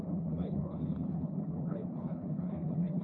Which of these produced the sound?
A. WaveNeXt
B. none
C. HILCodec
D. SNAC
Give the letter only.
C